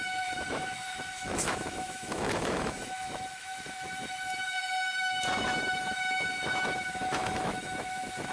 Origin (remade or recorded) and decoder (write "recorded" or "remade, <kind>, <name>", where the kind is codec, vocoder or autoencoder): remade, autoencoder, DAC-VAE